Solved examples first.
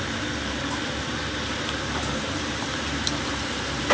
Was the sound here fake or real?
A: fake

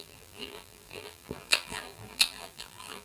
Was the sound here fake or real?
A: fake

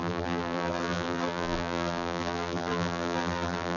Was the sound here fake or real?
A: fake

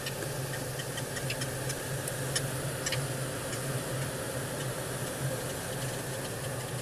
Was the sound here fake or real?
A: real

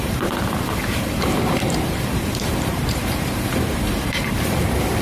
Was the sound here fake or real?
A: fake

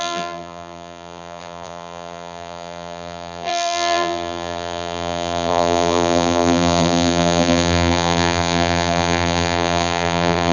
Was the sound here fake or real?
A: fake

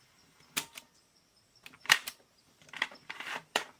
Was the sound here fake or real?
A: fake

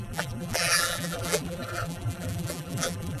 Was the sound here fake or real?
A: fake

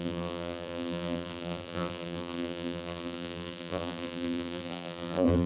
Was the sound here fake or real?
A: fake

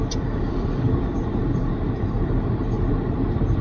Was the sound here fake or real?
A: real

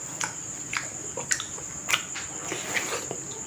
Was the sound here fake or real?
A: real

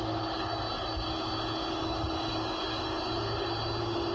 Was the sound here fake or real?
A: real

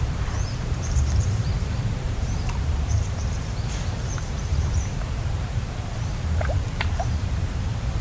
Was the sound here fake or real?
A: fake